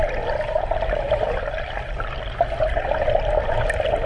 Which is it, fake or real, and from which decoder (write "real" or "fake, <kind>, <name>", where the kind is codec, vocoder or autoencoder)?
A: real